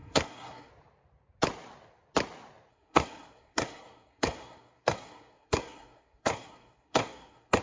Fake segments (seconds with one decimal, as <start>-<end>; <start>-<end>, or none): 0.0-0.7; 2.7-7.6